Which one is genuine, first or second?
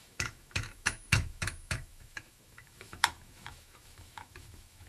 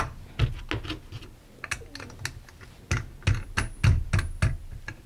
second